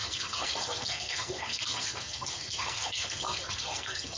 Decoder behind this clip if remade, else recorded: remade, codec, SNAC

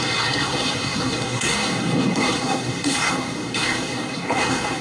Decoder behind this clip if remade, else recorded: remade, codec, SNAC